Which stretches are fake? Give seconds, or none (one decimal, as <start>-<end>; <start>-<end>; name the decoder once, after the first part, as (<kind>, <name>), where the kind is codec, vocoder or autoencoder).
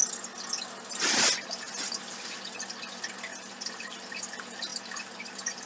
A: 3.3-4.2 (vocoder, BigVGAN v2); 4.7-5.6